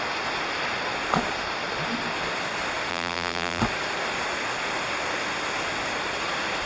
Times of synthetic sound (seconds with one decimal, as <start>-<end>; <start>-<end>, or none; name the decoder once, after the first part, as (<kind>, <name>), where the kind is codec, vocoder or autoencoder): 2.9-3.6 (vocoder, BigVGAN v2)